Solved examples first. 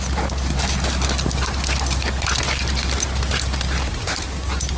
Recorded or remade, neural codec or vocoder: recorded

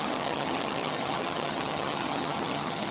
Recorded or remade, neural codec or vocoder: remade, vocoder, HiFi-GAN